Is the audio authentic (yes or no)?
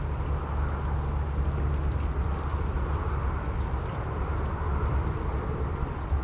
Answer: yes